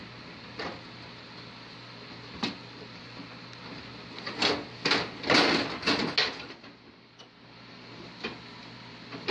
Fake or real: real